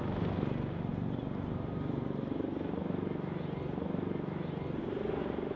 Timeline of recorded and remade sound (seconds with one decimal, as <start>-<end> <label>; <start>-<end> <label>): 0.0-5.6 recorded